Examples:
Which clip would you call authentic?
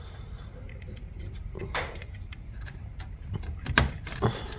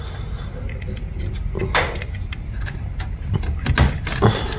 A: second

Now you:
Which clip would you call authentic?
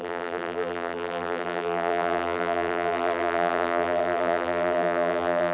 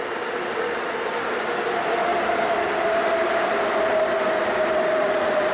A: second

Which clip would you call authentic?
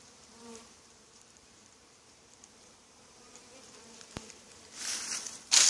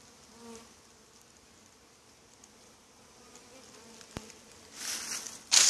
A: second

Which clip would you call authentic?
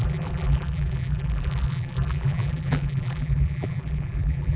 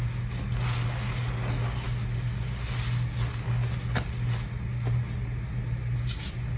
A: second